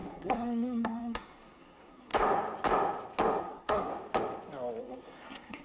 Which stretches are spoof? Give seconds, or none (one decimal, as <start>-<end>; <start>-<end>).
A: 0.0-2.1; 3.4-3.9; 4.8-5.6